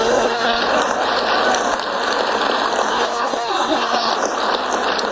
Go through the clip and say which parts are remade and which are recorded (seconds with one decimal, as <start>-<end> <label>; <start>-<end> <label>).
0.0-0.6 remade; 0.6-2.9 recorded; 2.9-4.1 remade; 4.1-5.1 recorded